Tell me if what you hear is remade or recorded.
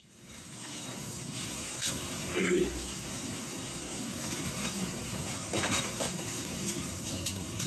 remade